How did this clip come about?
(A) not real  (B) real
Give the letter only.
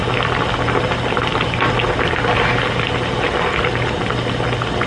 B